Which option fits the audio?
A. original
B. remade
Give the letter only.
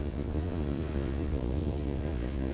B